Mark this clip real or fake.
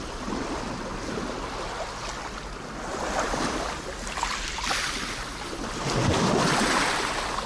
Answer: real